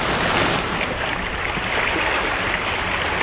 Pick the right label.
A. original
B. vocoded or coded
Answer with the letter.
A